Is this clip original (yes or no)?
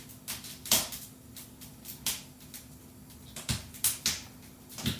yes